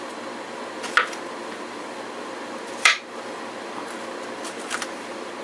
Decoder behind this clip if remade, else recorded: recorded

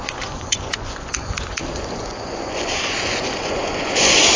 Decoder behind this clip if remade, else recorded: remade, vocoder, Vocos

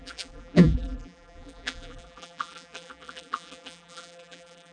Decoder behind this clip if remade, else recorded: remade, vocoder, BigVGAN v2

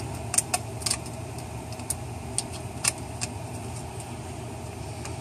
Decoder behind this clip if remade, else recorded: recorded